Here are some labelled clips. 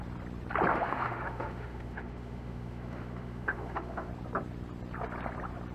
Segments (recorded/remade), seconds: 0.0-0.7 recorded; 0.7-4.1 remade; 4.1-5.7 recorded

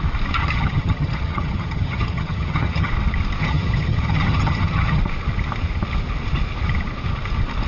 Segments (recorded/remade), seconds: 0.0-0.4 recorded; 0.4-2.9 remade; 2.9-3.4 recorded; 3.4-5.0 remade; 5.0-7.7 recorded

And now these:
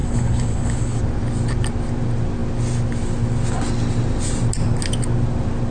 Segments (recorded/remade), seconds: 0.0-1.0 remade; 1.0-5.7 recorded